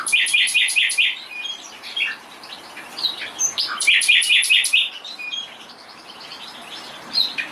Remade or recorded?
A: remade